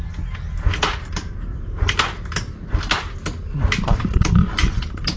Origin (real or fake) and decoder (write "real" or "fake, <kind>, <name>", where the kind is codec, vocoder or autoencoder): real